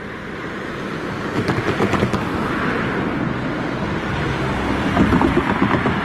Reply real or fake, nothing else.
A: real